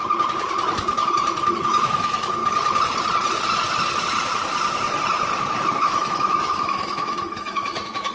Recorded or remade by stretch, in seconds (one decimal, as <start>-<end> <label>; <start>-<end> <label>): 0.0-1.5 recorded; 1.5-2.4 remade; 2.4-5.6 recorded; 5.6-8.1 remade